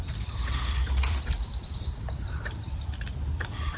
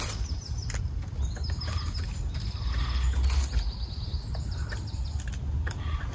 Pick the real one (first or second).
second